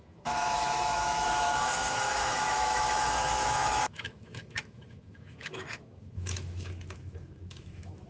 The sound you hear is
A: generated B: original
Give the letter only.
A